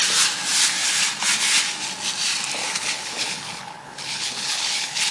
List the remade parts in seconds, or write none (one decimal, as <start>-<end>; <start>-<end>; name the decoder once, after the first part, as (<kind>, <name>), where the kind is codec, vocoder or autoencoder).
2.6-5.1 (codec, HILCodec)